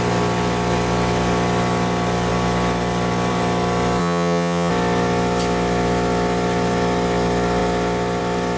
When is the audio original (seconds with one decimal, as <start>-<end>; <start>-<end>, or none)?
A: 0.0-4.0; 4.7-8.6